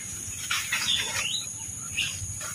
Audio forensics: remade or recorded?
remade